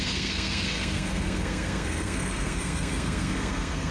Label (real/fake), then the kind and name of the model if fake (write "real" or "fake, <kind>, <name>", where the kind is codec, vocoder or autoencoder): fake, codec, SNAC